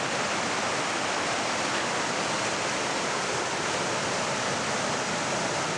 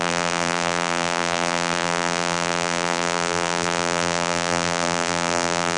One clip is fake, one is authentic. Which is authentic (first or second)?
first